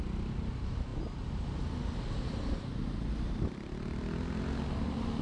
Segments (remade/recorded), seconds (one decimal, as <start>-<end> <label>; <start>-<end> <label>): 0.0-5.2 recorded